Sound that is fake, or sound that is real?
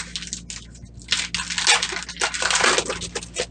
real